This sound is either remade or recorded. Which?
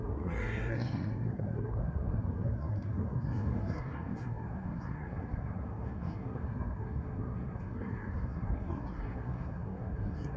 remade